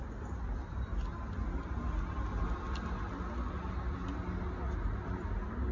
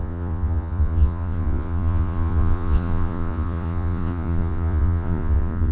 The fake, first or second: second